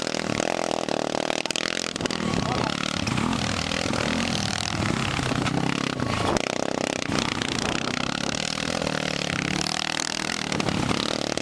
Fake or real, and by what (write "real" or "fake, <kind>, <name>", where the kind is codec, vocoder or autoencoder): real